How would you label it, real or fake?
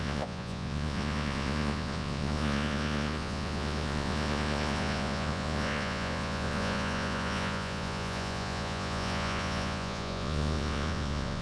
fake